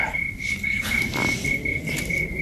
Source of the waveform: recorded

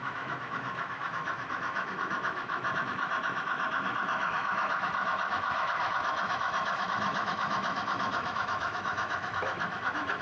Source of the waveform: remade